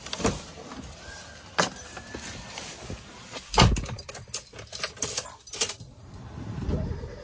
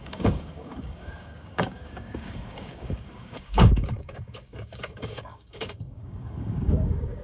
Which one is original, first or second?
first